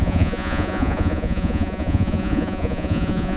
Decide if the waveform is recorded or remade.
remade